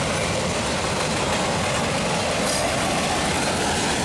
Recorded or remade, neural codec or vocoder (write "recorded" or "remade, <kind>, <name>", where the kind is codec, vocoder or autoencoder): recorded